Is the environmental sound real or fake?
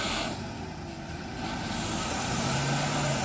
real